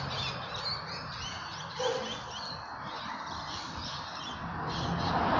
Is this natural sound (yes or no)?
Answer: yes